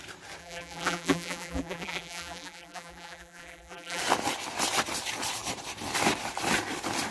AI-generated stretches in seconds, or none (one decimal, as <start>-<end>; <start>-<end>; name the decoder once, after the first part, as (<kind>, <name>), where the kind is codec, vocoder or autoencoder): 0.4-4.0 (vocoder, BigVGAN v2)